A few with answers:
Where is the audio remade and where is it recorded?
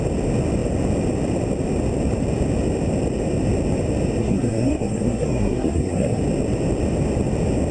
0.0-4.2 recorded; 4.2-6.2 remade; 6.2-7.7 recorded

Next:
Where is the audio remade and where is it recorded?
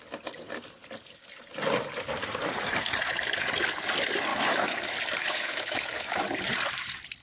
0.0-4.3 recorded; 4.3-4.8 remade; 4.8-5.2 recorded; 5.2-6.2 remade; 6.2-7.2 recorded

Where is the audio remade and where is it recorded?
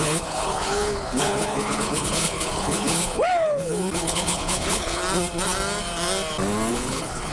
0.0-5.0 remade; 5.0-6.7 recorded; 6.7-7.3 remade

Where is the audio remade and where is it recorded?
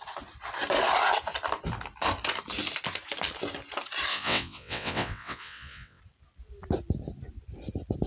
0.0-4.1 recorded; 4.1-6.0 remade; 6.0-8.1 recorded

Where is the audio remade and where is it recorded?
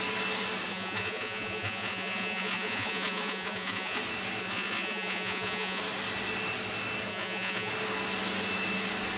0.0-0.7 recorded; 0.7-4.0 remade; 4.0-4.4 recorded; 4.4-5.8 remade; 5.8-7.1 recorded; 7.1-7.7 remade; 7.7-9.2 recorded